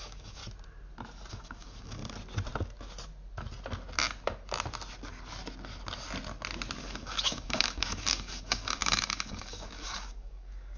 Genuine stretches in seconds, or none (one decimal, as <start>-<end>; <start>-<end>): 0.4-1.3; 2.0-6.8